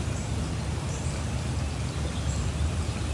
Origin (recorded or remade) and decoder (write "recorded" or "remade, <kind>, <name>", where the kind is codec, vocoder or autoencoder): recorded